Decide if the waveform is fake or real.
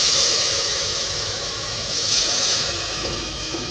fake